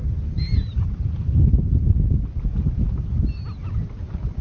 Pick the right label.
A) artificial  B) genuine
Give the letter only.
B